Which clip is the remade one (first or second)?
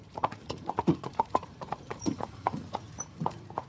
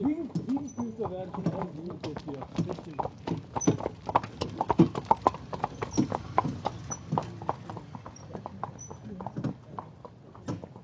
first